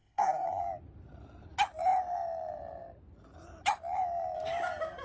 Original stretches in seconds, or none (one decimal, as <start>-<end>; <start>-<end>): 0.6-5.0